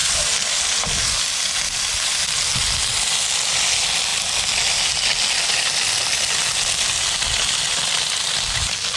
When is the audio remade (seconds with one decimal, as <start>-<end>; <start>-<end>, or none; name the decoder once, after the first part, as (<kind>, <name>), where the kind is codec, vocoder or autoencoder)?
none